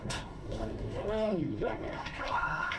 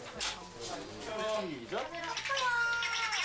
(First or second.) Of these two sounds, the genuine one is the second